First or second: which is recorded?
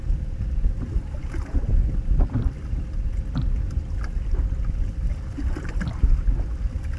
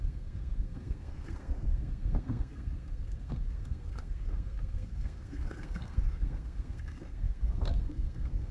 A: first